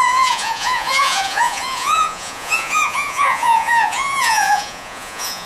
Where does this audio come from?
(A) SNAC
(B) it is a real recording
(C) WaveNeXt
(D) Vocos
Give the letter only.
D